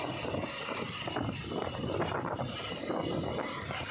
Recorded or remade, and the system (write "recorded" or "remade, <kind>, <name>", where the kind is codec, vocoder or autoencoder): recorded